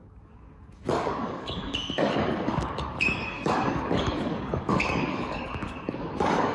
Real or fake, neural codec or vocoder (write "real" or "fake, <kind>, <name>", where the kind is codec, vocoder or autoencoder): fake, codec, DAC